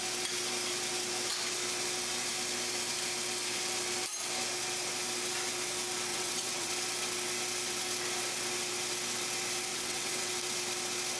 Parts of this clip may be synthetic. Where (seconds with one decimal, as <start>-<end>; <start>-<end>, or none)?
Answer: 6.1-6.7; 9.7-10.3